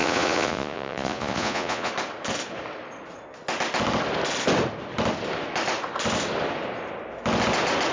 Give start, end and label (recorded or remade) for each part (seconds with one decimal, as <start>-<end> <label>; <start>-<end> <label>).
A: 0.0-1.9 remade; 1.9-7.9 recorded